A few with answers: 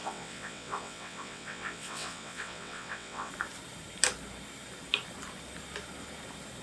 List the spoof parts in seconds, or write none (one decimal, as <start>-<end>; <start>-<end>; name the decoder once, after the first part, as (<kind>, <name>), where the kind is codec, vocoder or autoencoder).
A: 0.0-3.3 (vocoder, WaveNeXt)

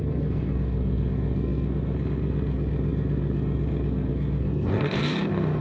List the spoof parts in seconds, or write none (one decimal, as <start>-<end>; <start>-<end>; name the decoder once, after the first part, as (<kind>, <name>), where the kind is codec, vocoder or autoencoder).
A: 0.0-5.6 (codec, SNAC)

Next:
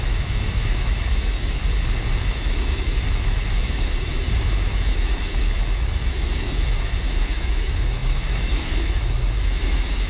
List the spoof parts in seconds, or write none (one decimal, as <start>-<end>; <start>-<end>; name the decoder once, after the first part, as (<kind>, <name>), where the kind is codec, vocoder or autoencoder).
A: 0.0-1.6 (autoencoder, DAC-VAE); 2.2-10.1

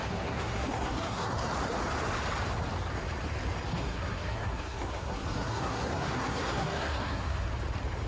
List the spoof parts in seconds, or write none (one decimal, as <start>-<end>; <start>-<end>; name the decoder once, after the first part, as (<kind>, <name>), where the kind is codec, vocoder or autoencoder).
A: 0.0-1.5 (codec, SNAC); 3.8-7.5